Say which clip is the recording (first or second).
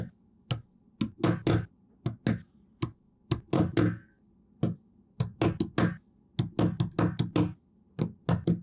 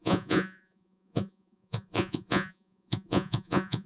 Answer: first